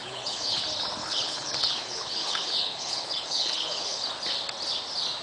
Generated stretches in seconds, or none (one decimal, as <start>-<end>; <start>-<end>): 0.0-0.6; 1.0-4.1